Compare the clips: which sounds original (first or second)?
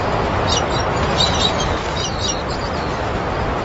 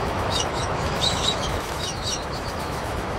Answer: first